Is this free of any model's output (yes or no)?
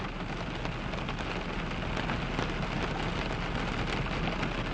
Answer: yes